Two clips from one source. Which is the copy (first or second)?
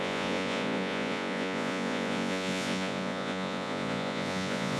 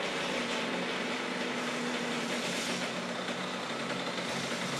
first